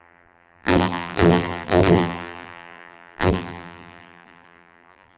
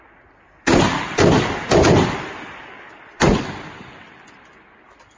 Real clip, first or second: second